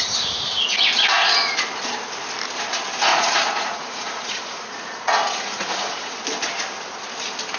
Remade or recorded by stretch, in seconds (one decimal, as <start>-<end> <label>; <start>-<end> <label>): 0.0-3.1 recorded; 3.1-6.1 remade; 6.1-7.6 recorded